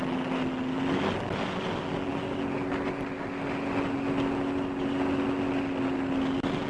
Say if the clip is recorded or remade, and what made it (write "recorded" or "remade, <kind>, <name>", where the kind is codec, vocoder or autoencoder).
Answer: recorded